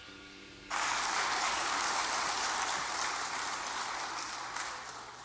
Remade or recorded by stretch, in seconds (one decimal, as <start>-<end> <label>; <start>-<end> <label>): 0.0-2.0 remade; 2.0-5.2 recorded